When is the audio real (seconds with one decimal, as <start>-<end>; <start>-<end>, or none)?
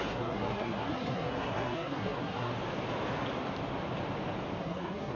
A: 2.5-4.6